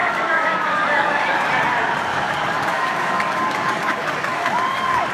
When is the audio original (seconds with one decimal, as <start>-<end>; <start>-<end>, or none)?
1.6-2.1